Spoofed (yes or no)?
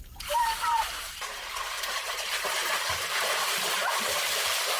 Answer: yes